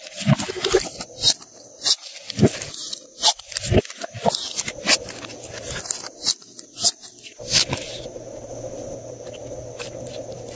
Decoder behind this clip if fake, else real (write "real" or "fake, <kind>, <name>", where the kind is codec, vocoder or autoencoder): real